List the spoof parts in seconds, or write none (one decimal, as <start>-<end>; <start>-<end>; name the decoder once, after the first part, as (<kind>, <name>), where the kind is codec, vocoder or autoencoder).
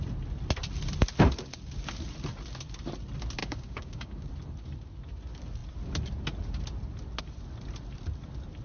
3.4-4.3 (codec, DAC)